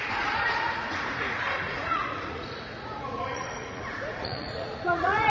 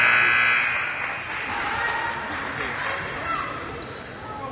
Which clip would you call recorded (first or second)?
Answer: second